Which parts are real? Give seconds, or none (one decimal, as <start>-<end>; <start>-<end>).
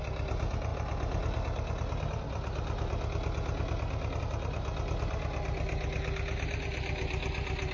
0.0-7.7